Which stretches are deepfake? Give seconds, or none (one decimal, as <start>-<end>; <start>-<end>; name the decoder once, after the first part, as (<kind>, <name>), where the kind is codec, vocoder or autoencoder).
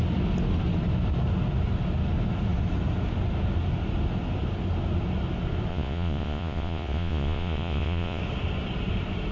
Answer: 5.7-8.2 (vocoder, Vocos)